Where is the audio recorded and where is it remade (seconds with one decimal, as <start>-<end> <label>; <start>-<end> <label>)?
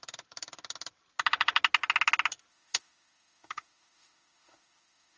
0.0-2.5 recorded; 2.5-5.2 remade